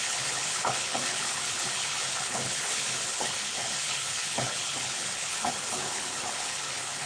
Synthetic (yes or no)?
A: yes